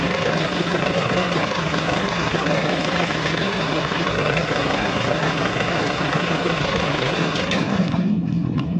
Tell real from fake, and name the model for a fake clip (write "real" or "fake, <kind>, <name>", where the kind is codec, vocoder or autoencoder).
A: fake, codec, SNAC